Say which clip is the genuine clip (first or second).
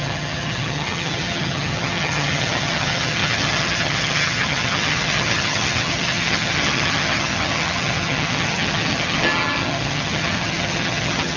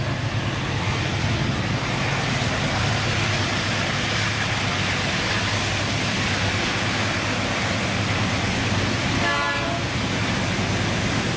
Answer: second